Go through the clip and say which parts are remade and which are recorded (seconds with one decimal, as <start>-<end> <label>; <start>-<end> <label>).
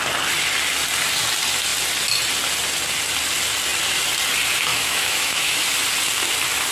0.0-4.7 recorded; 4.7-5.6 remade; 5.6-6.7 recorded